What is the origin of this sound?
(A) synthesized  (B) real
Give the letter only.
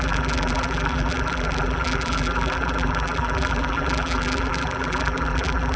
A